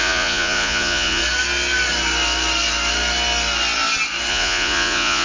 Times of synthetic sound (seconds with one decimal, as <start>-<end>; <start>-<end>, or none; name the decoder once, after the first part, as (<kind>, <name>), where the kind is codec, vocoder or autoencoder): 0.0-1.2 (vocoder, Vocos); 4.3-5.2

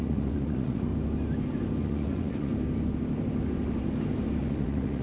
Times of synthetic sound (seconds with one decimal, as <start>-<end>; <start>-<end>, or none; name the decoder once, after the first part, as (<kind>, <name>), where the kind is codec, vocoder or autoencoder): 0.0-0.9 (vocoder, Vocos); 1.8-2.5; 4.4-5.0

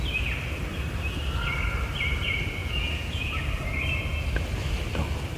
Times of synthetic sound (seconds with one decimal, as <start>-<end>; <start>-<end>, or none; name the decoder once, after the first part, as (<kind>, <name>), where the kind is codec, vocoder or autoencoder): 2.6-3.4 (vocoder, Vocos)

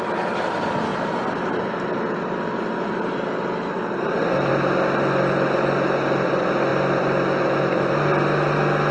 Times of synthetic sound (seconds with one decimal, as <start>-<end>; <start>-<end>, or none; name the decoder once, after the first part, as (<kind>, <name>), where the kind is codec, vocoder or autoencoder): none

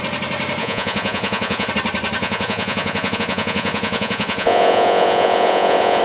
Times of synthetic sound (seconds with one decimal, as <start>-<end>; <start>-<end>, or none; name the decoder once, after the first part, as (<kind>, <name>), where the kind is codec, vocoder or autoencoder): 0.6-1.7 (vocoder, Vocos); 2.2-6.0